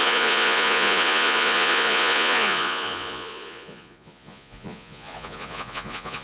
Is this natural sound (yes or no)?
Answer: no